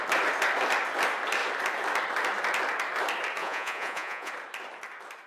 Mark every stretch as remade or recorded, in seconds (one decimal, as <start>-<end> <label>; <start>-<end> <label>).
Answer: 0.0-3.4 recorded; 3.4-4.3 remade; 4.3-5.3 recorded